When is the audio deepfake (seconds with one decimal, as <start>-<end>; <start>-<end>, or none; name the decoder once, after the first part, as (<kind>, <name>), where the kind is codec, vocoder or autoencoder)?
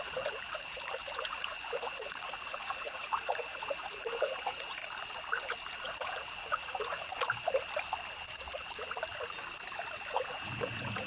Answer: 0.0-4.8 (vocoder, Vocos); 5.7-7.1; 10.1-11.1